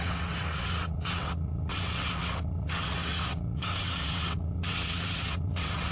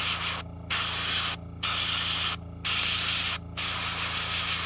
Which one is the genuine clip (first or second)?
second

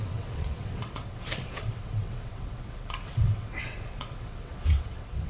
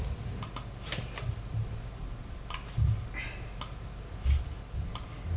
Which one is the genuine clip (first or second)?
second